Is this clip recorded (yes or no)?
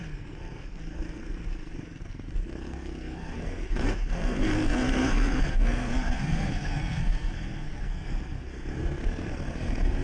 no